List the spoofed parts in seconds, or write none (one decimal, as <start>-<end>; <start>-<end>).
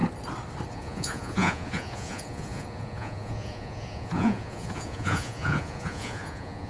0.7-6.7